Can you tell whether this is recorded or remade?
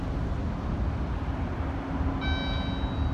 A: recorded